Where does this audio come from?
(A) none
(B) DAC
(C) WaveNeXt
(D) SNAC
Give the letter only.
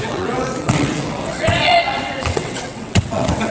C